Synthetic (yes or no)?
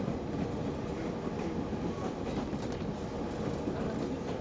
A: no